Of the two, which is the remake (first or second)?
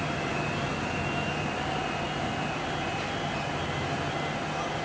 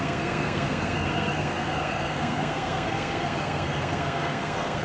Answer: second